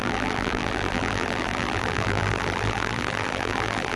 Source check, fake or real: fake